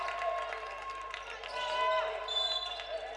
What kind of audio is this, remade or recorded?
recorded